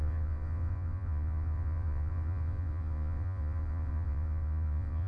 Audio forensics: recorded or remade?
remade